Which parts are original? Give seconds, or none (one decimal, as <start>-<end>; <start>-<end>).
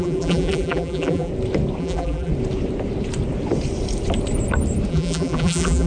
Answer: 1.3-1.8; 2.3-4.9